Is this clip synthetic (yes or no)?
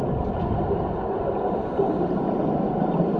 no